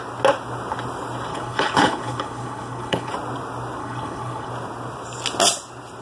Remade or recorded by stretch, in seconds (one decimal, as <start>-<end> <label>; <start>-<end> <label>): 0.0-1.3 recorded; 1.3-3.1 remade; 3.1-3.8 recorded; 3.8-4.5 remade; 4.5-6.0 recorded